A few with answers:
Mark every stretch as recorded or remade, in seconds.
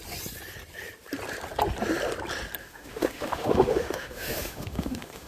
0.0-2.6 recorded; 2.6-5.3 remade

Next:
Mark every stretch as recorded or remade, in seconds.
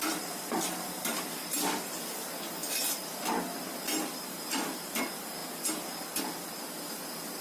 0.0-7.4 recorded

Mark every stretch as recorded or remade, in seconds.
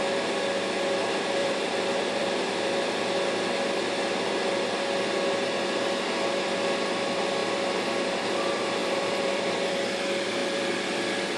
0.0-1.4 recorded; 1.4-2.9 remade; 2.9-8.8 recorded; 8.8-9.7 remade; 9.7-10.4 recorded; 10.4-11.0 remade; 11.0-11.4 recorded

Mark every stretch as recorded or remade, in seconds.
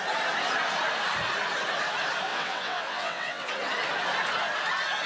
0.0-2.3 recorded; 2.3-3.5 remade; 3.5-5.1 recorded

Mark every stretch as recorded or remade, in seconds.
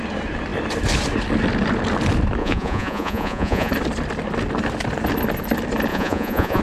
0.0-2.4 recorded; 2.4-3.7 remade; 3.7-5.9 recorded; 5.9-6.6 remade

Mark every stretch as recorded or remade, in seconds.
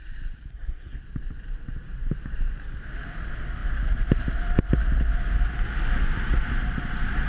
0.0-0.5 recorded; 0.5-1.0 remade; 1.0-7.3 recorded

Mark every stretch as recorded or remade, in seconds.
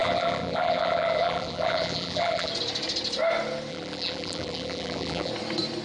0.0-2.5 remade; 2.5-3.7 recorded; 3.7-5.3 remade; 5.3-5.8 recorded